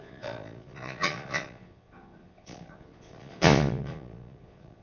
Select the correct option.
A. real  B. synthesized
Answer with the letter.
B